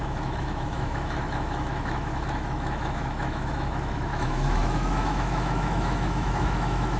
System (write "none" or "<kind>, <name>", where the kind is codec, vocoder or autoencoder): autoencoder, DAC-VAE